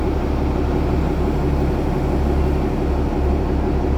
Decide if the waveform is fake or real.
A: real